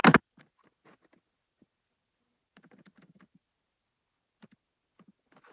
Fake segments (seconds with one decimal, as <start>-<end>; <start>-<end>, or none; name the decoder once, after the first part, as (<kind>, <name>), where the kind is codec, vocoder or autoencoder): none